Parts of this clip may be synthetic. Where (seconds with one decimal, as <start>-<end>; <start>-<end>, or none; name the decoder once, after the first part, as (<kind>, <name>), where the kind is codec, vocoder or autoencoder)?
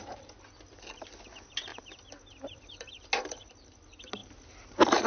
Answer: none